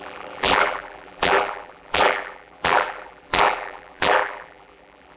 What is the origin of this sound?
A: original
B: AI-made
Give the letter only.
B